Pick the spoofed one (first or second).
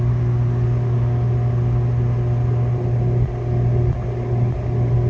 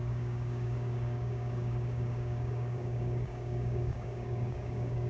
second